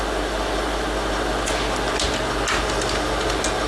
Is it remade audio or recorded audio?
recorded